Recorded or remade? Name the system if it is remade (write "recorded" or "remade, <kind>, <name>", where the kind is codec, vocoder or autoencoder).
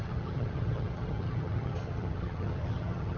remade, vocoder, HiFi-GAN